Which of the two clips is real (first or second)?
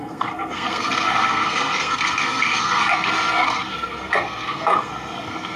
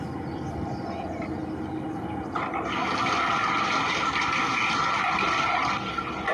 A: second